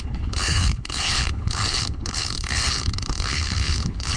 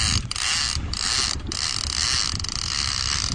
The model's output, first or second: first